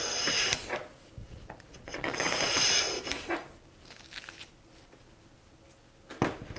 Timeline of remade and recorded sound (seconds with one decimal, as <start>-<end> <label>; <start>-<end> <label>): 0.0-1.2 recorded; 1.2-2.7 remade; 2.7-6.6 recorded